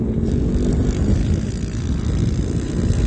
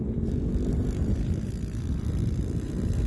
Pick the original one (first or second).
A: first